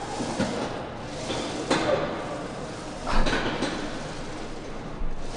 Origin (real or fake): real